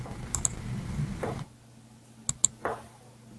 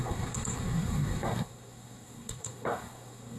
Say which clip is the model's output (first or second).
second